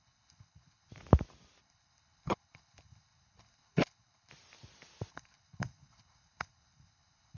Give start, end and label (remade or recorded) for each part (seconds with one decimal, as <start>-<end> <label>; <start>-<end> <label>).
0.0-0.9 remade; 0.9-1.6 recorded; 1.6-4.3 remade; 4.3-5.1 recorded; 5.1-7.4 remade